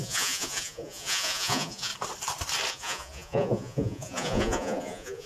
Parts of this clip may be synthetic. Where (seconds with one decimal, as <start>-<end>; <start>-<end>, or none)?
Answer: 0.0-1.9; 2.7-5.3